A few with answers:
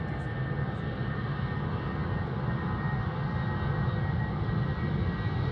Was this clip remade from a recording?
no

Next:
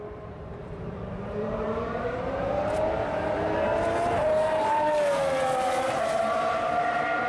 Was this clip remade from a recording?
yes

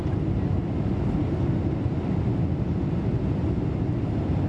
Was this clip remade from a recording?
no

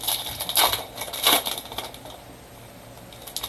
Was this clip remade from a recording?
no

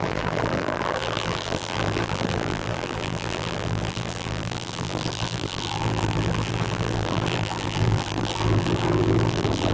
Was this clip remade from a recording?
yes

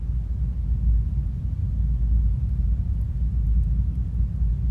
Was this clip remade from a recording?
no